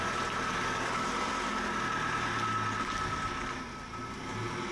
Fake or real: real